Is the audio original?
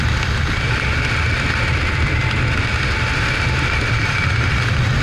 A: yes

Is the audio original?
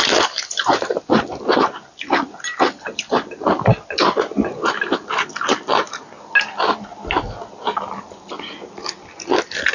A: yes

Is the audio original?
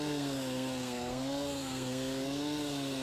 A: no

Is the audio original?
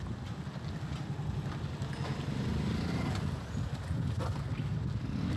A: yes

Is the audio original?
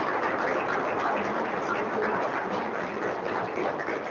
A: yes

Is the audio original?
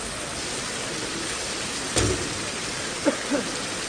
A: yes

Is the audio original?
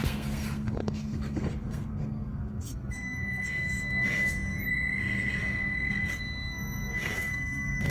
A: no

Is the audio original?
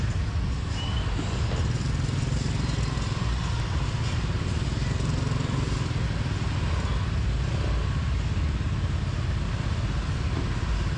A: yes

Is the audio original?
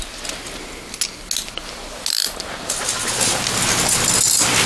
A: yes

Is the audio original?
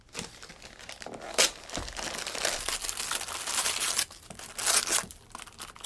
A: yes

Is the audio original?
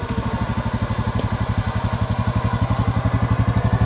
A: yes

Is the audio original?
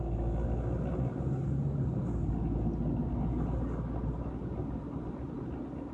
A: yes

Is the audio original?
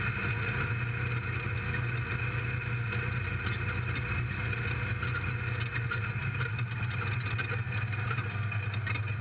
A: yes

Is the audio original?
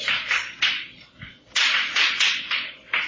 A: yes